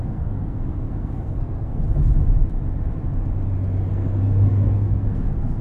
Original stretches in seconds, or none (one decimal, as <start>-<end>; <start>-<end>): 1.8-3.9